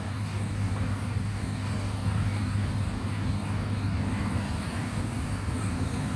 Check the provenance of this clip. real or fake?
fake